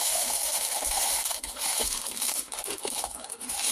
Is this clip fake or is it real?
fake